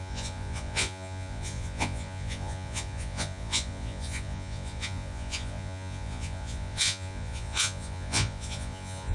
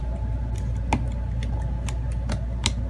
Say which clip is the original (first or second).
second